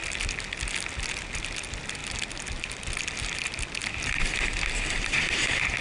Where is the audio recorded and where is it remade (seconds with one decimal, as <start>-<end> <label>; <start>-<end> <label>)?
0.0-5.8 recorded